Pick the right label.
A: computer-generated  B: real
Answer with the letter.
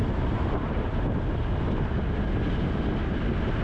B